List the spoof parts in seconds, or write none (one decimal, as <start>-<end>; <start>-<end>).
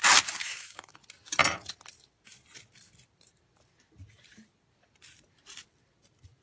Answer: 0.4-0.9